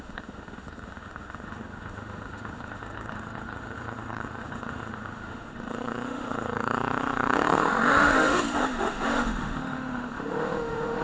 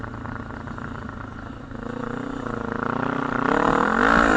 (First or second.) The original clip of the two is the second